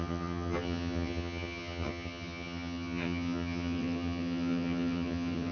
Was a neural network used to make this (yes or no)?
yes